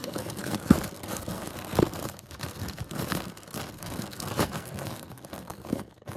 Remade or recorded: remade